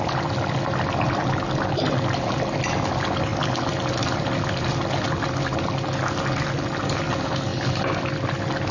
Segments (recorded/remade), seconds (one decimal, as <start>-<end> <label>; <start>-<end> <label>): 0.0-8.7 recorded

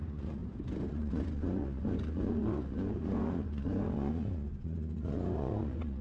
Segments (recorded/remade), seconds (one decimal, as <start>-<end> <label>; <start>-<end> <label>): 0.0-0.4 remade; 0.4-0.9 recorded; 0.9-6.0 remade

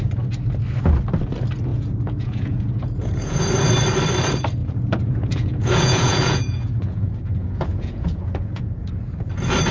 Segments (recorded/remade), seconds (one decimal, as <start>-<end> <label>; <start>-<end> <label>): 0.0-1.7 recorded; 1.7-3.4 remade; 3.4-4.6 recorded; 4.6-8.9 remade; 8.9-9.7 recorded

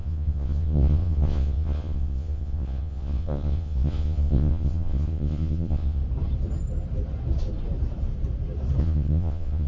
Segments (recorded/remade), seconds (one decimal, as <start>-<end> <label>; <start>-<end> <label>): 0.0-6.0 remade; 6.0-8.8 recorded; 8.8-9.7 remade

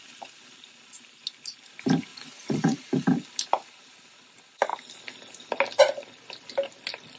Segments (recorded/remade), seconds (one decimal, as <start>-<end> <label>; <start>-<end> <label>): 0.0-2.1 recorded; 2.1-2.9 remade; 2.9-7.2 recorded

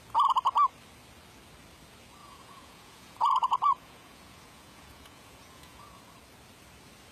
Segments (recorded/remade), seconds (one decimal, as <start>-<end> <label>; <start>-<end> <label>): 0.0-2.2 recorded; 2.2-6.0 remade; 6.0-7.1 recorded

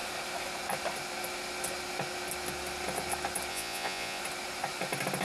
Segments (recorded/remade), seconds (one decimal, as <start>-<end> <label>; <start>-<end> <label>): 0.0-3.5 recorded; 3.5-4.2 remade; 4.2-5.2 recorded

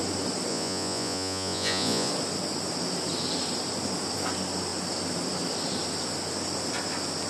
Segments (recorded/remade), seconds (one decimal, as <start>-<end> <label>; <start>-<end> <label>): 0.0-0.5 recorded; 0.5-2.1 remade; 2.1-7.3 recorded